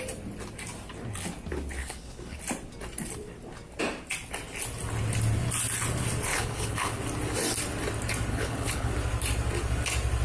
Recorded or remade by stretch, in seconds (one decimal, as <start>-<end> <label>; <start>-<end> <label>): 0.0-1.8 recorded; 1.8-2.4 remade; 2.4-6.3 recorded; 6.3-7.0 remade; 7.0-8.3 recorded; 8.3-8.9 remade; 8.9-10.2 recorded